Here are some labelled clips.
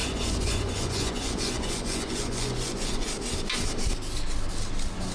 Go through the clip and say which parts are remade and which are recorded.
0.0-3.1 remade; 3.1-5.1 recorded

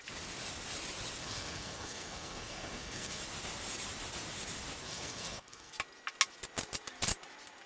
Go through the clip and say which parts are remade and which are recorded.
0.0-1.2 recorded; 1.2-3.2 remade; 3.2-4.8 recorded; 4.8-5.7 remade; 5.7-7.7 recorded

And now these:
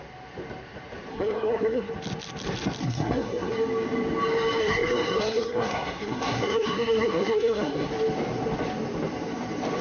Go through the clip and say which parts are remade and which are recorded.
0.0-1.1 recorded; 1.1-1.9 remade; 1.9-2.8 recorded; 2.8-3.5 remade; 3.5-4.6 recorded; 4.6-7.9 remade; 7.9-9.8 recorded

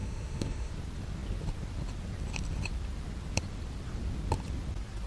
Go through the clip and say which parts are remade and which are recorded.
0.0-0.7 remade; 0.7-5.1 recorded

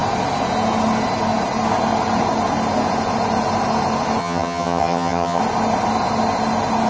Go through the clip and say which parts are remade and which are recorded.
0.0-4.2 recorded; 4.2-5.4 remade; 5.4-6.9 recorded